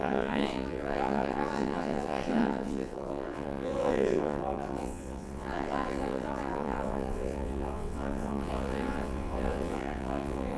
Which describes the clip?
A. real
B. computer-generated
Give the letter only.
B